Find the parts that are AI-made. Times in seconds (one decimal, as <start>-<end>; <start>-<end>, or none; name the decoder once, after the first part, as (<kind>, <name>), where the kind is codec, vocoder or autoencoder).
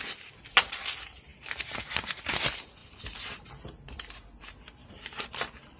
2.8-3.5 (vocoder, BigVGAN v2); 4.8-5.3